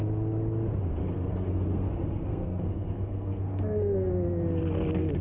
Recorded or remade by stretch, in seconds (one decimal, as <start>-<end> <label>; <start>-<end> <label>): 0.0-1.0 recorded; 1.0-4.1 remade; 4.1-5.2 recorded